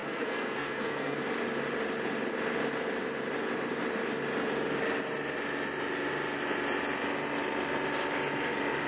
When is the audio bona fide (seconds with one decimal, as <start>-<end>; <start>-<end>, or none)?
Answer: 1.2-8.9